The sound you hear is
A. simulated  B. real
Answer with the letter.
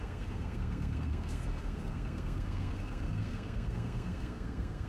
A